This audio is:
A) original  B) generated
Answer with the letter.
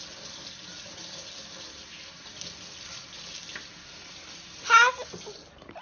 A